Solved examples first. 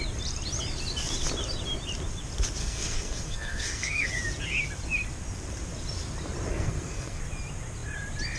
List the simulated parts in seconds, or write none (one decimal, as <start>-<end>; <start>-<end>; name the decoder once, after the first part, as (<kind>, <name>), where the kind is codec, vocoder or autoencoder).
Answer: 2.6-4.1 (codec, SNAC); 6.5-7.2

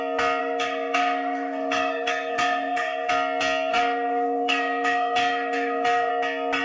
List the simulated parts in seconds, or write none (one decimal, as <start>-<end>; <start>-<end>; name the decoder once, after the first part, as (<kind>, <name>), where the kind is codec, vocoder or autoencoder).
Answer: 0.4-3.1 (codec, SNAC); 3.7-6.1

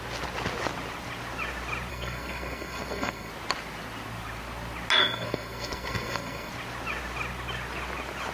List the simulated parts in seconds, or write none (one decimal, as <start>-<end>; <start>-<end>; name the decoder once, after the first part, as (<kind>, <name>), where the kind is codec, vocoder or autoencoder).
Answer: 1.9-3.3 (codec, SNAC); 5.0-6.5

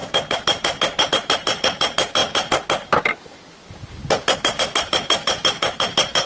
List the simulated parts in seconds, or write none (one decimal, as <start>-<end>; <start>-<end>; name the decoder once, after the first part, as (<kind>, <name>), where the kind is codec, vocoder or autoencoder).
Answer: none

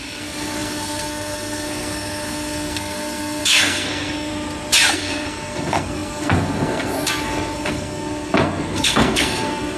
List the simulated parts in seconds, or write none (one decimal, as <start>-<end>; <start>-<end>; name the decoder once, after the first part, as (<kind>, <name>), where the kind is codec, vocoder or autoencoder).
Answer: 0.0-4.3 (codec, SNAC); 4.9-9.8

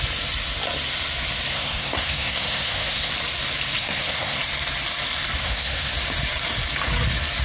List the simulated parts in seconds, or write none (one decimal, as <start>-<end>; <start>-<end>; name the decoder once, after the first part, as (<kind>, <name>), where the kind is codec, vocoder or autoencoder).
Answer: 1.5-3.1 (codec, SNAC); 3.8-4.4; 5.4-5.9

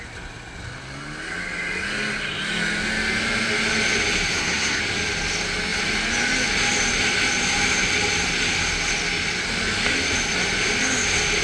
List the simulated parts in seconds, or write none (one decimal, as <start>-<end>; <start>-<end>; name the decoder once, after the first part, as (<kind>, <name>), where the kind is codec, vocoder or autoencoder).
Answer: 4.3-4.8 (codec, SNAC)